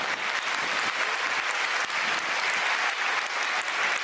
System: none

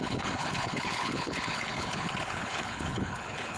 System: codec, HILCodec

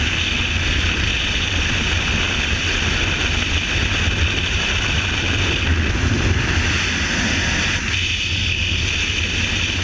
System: none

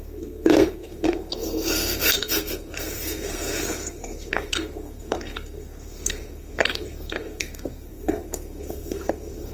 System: codec, SNAC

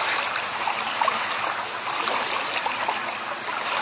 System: none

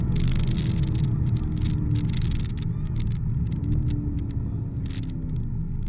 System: none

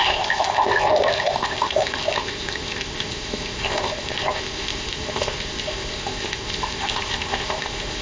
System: codec, ZipCodec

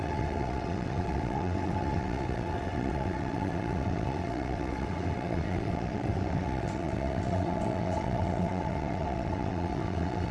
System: vocoder, WaveNeXt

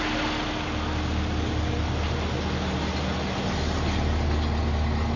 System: none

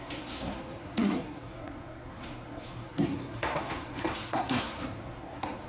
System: codec, SNAC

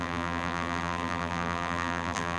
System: vocoder, BigVGAN v2